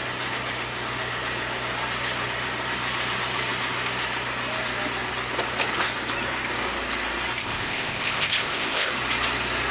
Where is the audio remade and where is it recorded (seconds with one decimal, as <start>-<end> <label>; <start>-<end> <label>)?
0.0-7.4 recorded; 7.4-8.9 remade; 8.9-9.7 recorded